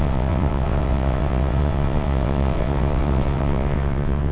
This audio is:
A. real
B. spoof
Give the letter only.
B